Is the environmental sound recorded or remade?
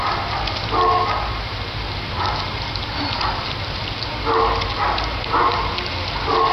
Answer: recorded